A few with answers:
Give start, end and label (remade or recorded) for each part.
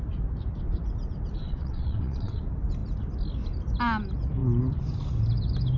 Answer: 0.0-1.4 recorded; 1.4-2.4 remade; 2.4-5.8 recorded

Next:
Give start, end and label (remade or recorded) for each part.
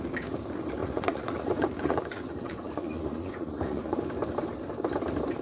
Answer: 0.0-0.8 recorded; 0.8-4.0 remade; 4.0-5.4 recorded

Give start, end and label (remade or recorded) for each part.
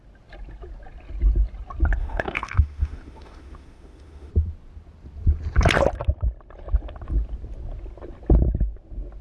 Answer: 0.0-2.0 recorded; 2.0-4.3 remade; 4.3-9.2 recorded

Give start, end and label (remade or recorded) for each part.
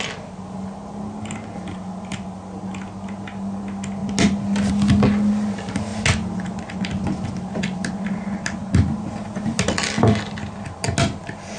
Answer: 0.0-11.6 recorded